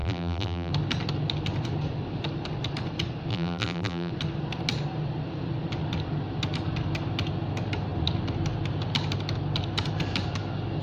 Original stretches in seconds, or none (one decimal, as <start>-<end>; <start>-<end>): 0.7-3.3; 4.1-10.8